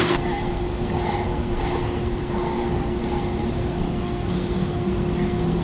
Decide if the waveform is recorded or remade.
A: remade